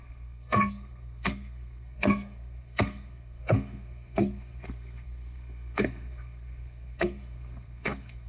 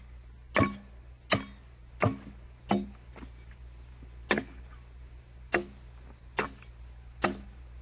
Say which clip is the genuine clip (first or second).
second